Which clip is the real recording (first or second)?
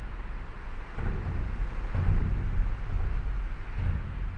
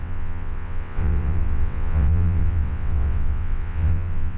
first